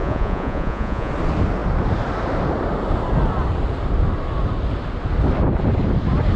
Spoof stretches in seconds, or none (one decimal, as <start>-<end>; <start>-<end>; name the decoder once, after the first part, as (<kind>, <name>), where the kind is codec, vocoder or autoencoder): 0.0-1.1 (vocoder, Vocos)